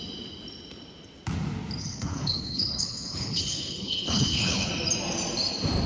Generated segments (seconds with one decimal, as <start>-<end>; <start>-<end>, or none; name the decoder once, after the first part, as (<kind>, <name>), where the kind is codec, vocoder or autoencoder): 1.8-4.7 (codec, HILCodec)